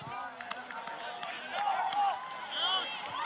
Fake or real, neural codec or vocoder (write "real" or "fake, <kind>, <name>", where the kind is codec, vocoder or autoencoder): real